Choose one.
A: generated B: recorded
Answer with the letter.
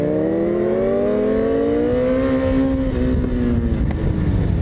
B